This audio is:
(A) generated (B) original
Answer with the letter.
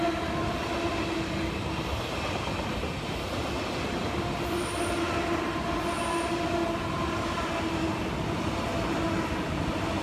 B